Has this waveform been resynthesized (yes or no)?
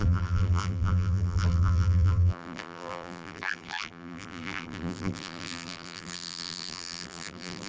yes